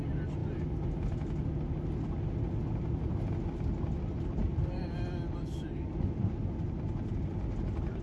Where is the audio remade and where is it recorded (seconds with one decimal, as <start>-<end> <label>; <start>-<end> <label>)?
0.0-8.0 recorded